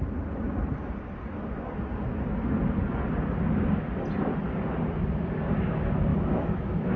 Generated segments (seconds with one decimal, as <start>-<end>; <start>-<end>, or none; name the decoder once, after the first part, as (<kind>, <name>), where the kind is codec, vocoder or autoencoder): 6.1-7.0 (autoencoder, DAC-VAE)